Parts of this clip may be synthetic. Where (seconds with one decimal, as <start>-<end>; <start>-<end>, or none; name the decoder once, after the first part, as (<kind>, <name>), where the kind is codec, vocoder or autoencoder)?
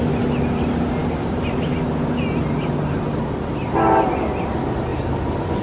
none